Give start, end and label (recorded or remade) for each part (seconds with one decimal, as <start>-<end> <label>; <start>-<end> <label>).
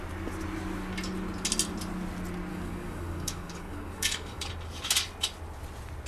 0.0-2.5 recorded; 2.5-4.5 remade; 4.5-6.1 recorded